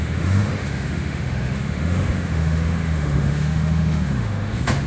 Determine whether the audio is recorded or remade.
remade